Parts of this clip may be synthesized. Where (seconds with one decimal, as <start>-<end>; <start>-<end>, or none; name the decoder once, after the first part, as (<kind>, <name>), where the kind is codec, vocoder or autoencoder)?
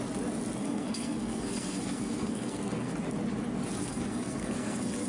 0.6-2.9 (codec, SNAC); 3.8-5.1